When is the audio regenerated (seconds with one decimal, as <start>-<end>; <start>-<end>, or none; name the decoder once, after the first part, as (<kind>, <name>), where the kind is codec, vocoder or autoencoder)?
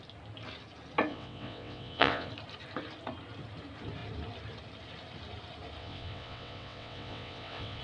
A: 1.1-2.3 (vocoder, WaveNeXt); 5.8-7.8